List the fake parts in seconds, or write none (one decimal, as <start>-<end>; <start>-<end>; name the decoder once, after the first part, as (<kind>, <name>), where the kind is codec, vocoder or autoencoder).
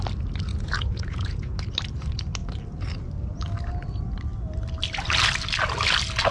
0.5-1.6 (vocoder, Vocos)